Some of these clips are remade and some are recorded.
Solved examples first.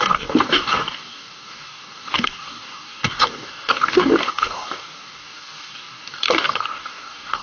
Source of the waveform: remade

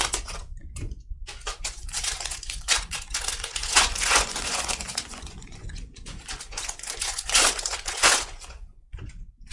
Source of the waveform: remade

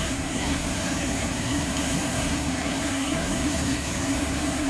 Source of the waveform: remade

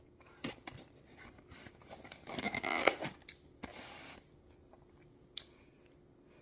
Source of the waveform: recorded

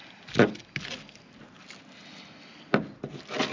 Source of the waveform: recorded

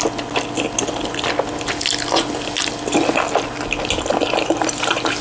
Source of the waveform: recorded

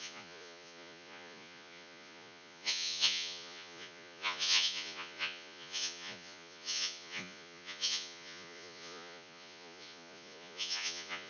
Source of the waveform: remade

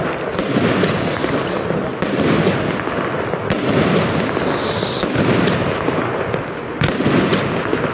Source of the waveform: recorded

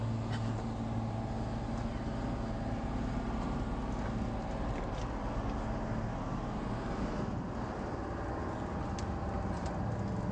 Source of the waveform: recorded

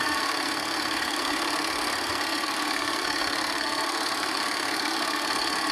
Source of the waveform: remade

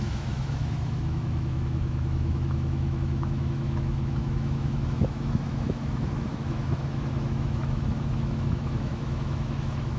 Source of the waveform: remade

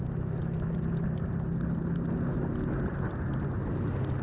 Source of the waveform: recorded